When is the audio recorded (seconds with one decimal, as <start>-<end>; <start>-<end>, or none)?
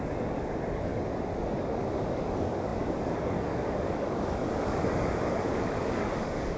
0.9-1.6